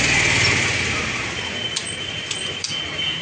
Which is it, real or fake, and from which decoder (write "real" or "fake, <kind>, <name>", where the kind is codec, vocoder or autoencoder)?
real